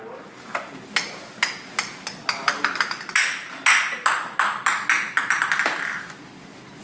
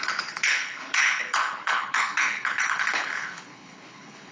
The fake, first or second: second